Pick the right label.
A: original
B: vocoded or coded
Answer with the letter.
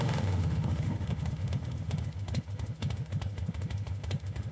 B